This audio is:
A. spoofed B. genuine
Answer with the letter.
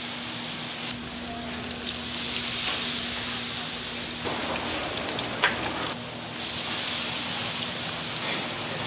B